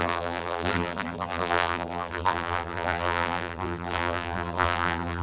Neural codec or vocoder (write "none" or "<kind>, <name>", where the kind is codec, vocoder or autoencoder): vocoder, BigVGAN v2